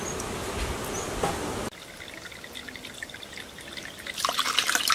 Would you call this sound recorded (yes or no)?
yes